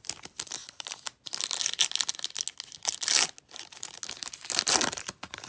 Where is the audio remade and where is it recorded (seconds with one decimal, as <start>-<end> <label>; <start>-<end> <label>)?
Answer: 0.0-5.5 recorded